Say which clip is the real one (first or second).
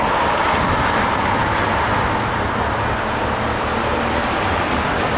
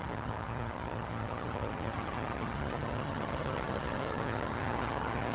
first